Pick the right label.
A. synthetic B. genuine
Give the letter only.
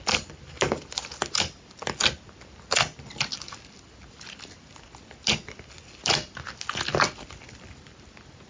B